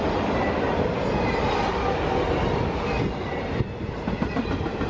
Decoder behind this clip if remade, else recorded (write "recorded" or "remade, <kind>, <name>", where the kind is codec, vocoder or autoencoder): recorded